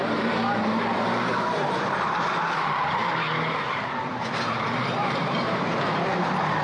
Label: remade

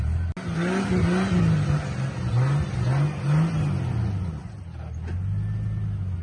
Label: recorded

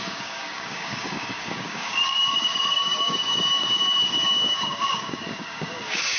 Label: remade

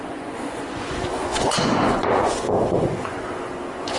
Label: remade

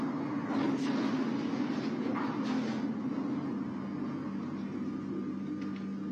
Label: recorded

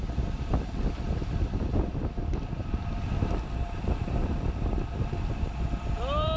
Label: remade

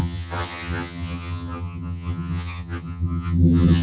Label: remade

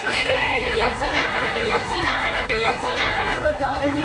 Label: remade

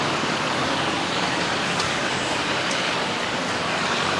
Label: remade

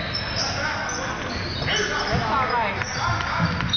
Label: recorded